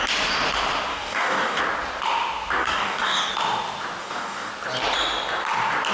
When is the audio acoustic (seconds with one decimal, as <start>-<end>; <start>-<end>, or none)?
0.0-0.9; 1.6-2.6; 3.3-4.0; 4.5-5.9

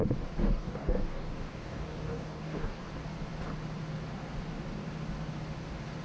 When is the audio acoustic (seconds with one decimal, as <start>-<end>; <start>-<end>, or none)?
0.0-0.4; 2.9-6.0

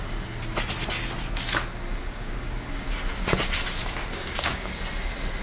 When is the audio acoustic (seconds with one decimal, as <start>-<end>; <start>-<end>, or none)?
0.0-2.0; 2.7-3.8; 4.7-5.4